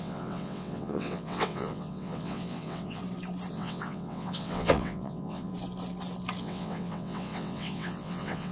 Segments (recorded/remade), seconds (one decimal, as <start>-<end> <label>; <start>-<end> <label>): 0.0-3.0 remade; 3.0-3.5 recorded; 3.5-5.5 remade; 5.5-6.4 recorded; 6.4-8.5 remade